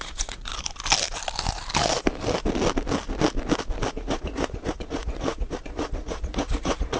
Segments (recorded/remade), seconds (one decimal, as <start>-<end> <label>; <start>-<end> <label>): 0.0-0.5 remade; 0.5-3.9 recorded; 3.9-7.0 remade